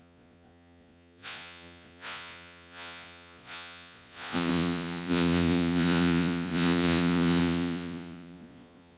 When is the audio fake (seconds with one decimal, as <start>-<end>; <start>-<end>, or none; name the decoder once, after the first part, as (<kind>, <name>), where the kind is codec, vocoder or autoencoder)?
0.0-9.0 (vocoder, Vocos)